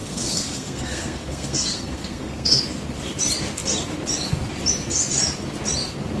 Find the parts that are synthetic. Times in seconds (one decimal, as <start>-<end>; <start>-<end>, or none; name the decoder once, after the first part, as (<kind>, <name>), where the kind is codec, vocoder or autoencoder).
0.0-2.6 (codec, SNAC)

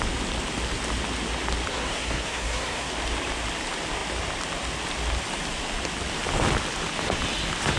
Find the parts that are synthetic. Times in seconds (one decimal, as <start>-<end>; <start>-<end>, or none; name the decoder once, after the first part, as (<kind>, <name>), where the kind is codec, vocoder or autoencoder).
1.7-2.9 (codec, SNAC)

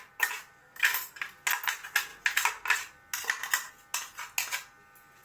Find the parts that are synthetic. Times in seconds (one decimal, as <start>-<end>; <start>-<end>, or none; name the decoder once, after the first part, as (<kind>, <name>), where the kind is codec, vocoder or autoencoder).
0.6-1.2 (codec, SNAC)